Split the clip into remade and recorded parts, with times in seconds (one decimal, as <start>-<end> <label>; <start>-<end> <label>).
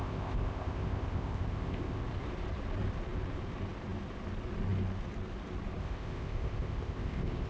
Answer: 0.0-2.0 remade; 2.0-5.8 recorded; 5.8-7.5 remade